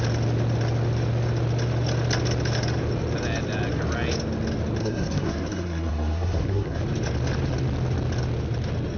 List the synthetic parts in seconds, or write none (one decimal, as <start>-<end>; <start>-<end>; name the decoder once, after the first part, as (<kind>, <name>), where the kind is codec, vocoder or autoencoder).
4.8-6.8 (codec, SNAC)